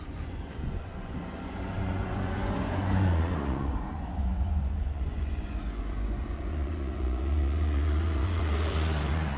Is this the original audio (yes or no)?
no